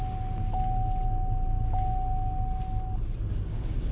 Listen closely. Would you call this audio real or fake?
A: real